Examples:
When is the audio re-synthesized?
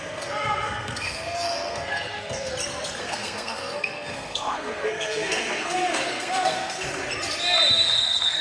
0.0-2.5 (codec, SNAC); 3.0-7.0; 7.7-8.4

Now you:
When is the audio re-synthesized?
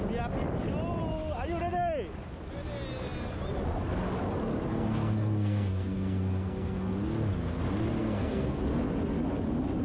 4.7-6.9 (codec, SNAC); 8.0-8.6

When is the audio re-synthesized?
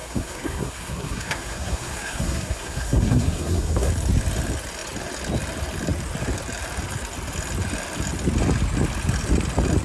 0.0-3.9 (codec, SNAC)